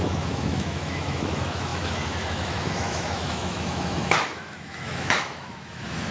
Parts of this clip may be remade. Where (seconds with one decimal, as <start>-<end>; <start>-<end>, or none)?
0.0-6.1